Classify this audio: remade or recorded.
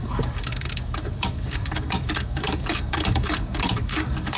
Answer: remade